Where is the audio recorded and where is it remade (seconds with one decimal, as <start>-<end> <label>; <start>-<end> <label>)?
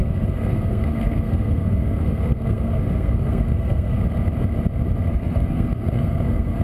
0.0-4.0 remade; 4.0-5.1 recorded; 5.1-6.6 remade